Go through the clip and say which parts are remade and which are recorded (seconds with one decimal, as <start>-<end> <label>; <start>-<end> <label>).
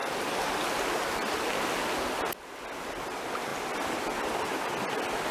0.0-5.3 recorded